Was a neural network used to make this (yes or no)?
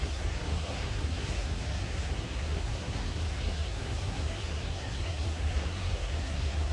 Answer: yes